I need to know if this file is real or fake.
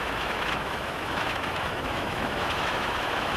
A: fake